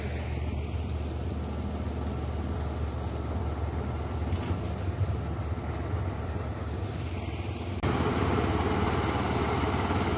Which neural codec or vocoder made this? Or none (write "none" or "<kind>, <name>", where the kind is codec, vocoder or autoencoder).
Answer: none